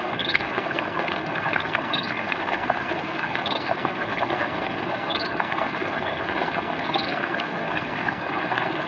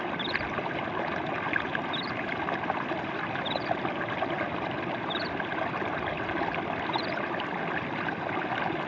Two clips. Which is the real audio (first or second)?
second